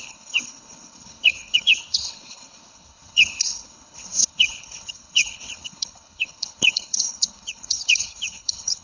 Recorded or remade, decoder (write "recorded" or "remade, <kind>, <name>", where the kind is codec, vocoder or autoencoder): remade, codec, HILCodec